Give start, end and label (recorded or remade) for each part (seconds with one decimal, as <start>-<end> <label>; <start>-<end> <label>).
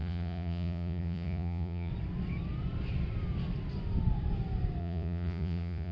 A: 0.0-1.9 remade; 1.9-4.8 recorded; 4.8-5.9 remade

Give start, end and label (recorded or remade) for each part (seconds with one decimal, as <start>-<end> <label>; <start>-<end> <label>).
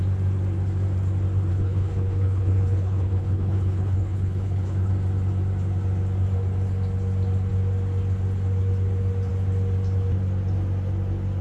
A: 0.0-1.5 recorded; 1.5-4.9 remade; 4.9-11.4 recorded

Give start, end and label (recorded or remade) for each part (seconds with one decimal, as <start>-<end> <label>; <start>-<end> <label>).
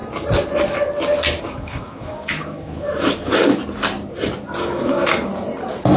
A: 0.0-1.4 recorded; 1.4-3.6 remade; 3.6-4.6 recorded; 4.6-5.3 remade; 5.3-6.0 recorded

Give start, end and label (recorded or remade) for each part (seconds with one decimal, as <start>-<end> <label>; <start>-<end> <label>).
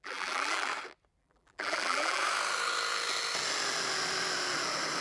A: 0.0-0.7 remade; 0.7-1.2 recorded; 1.2-2.2 remade; 2.2-5.0 recorded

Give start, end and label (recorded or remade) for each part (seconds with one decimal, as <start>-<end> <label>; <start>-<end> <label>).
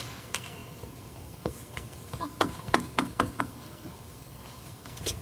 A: 0.0-5.2 remade